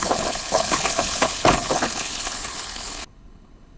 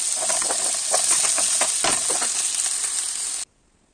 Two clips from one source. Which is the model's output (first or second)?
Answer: first